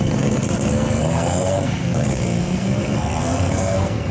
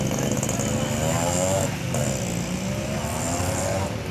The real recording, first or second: second